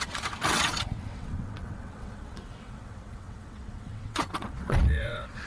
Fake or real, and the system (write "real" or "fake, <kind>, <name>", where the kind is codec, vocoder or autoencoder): fake, vocoder, WaveNeXt